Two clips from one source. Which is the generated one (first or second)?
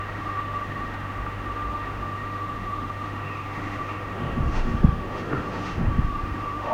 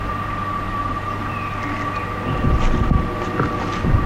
first